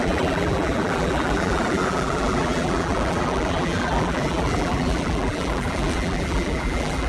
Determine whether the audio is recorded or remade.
remade